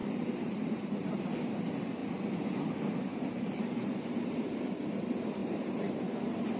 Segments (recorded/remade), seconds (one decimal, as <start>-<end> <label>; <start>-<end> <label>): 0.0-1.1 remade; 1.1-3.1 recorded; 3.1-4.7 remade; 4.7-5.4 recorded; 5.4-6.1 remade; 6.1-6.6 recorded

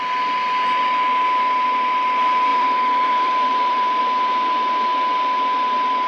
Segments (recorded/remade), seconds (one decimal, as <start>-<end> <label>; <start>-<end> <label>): 0.0-2.5 recorded; 2.5-4.0 remade; 4.0-6.1 recorded

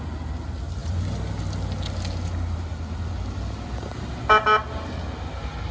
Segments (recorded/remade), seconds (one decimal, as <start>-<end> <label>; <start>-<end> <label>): 0.0-0.8 recorded; 0.8-1.4 remade; 1.4-5.7 recorded